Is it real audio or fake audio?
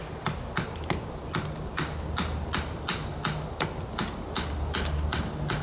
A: real